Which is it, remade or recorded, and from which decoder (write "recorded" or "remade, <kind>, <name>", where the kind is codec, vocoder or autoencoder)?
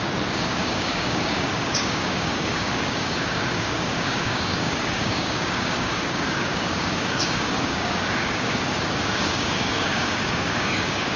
remade, codec, DAC